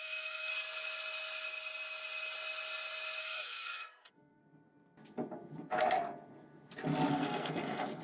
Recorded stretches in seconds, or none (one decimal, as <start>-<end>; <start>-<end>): 0.5-3.2; 4.4-7.1